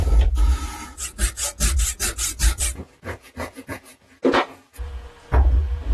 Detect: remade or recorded remade